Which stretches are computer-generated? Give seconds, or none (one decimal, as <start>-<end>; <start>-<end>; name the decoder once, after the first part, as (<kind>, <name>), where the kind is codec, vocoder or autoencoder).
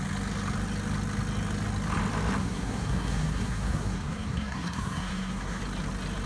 2.4-5.6 (codec, SNAC)